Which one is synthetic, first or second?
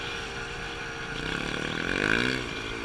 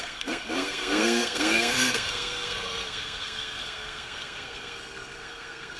second